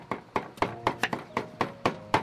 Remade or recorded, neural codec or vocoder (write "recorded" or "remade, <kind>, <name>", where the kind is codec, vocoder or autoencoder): recorded